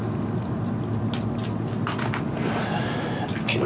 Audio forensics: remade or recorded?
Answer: recorded